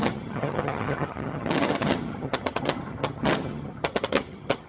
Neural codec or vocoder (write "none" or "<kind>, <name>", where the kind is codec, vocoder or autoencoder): vocoder, HiFi-GAN